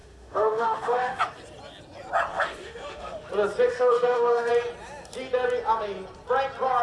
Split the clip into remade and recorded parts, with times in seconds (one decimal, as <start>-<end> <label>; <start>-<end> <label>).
0.0-1.2 remade; 1.2-2.3 recorded; 2.3-3.3 remade; 3.3-3.7 recorded; 3.7-4.5 remade; 4.5-6.8 recorded